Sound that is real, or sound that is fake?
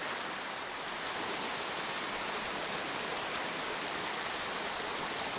real